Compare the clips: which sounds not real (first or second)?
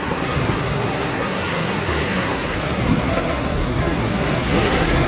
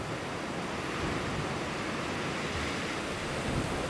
first